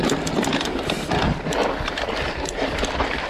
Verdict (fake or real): real